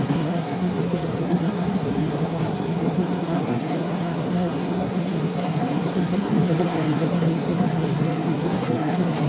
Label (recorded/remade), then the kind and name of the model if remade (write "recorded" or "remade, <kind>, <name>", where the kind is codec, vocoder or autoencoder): remade, codec, SNAC